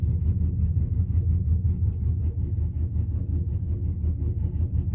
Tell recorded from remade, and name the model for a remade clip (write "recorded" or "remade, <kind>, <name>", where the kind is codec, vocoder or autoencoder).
recorded